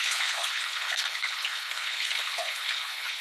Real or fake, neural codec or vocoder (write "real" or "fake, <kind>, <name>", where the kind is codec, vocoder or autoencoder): fake, codec, HILCodec